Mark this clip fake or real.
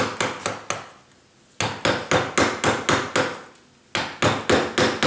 real